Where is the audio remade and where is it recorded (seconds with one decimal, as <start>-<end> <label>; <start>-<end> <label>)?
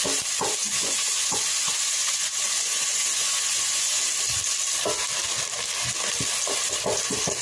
0.0-0.6 recorded; 0.6-4.0 remade; 4.0-7.4 recorded